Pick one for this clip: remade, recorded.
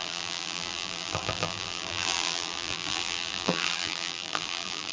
remade